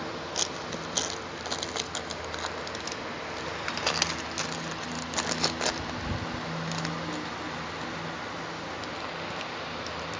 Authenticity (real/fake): real